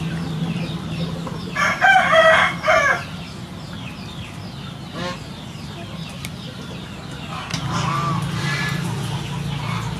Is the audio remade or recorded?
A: recorded